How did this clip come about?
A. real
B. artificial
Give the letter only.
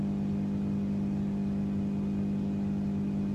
A